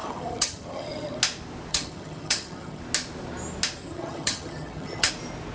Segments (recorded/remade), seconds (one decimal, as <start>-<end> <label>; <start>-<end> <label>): 0.0-1.2 remade; 1.2-1.7 recorded; 1.7-2.8 remade; 2.8-3.8 recorded; 3.8-5.1 remade; 5.1-5.5 recorded

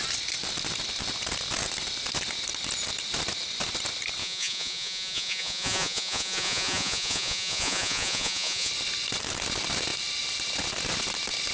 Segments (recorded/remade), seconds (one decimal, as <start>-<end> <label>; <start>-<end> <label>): 0.0-4.2 recorded; 4.2-8.7 remade; 8.7-11.5 recorded

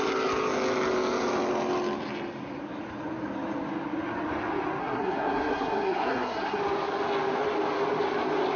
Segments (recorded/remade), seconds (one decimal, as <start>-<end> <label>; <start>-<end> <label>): 0.0-4.8 recorded; 4.8-6.6 remade; 6.6-8.6 recorded

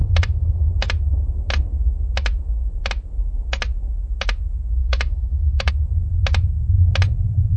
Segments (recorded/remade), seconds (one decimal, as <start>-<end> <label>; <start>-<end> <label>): 0.0-0.7 remade; 0.7-4.8 recorded; 4.8-5.7 remade; 5.7-7.6 recorded

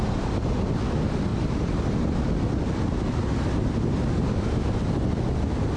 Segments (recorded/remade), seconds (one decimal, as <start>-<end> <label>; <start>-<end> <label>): 0.0-5.8 recorded

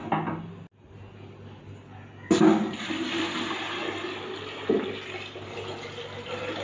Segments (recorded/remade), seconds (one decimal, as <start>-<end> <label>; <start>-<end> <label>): 0.0-6.6 recorded

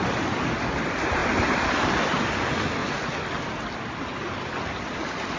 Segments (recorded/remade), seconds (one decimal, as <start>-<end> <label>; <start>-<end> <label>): 0.0-1.2 recorded; 1.2-1.7 remade; 1.7-5.4 recorded